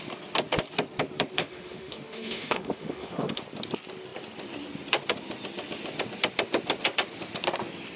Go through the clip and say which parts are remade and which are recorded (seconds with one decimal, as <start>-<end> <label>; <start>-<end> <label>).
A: 0.0-1.4 recorded; 1.4-3.4 remade; 3.4-8.0 recorded